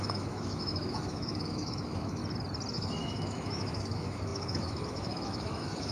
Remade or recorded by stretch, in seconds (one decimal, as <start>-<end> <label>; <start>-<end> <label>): 0.0-2.2 remade; 2.2-2.7 recorded; 2.7-5.9 remade